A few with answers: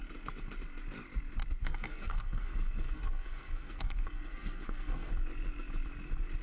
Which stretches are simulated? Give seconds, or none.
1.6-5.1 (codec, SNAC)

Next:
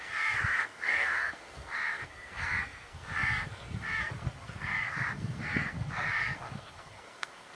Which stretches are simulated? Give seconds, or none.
0.0-7.5 (codec, SNAC)

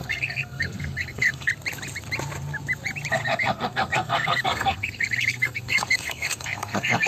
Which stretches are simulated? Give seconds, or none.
0.0-1.5 (codec, SNAC); 3.1-7.1

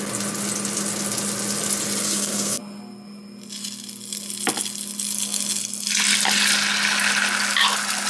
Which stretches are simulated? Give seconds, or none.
2.0-2.6 (codec, SNAC)